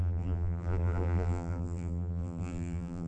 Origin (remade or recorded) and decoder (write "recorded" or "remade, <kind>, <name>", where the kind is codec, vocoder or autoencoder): remade, vocoder, BigVGAN v2